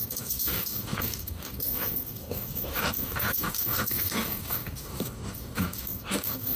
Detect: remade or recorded remade